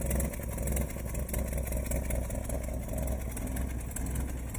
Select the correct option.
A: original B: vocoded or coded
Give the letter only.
A